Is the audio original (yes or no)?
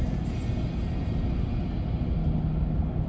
yes